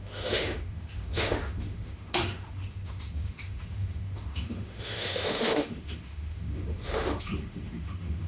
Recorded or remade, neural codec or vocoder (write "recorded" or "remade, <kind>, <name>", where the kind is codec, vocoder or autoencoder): remade, autoencoder, DAC-VAE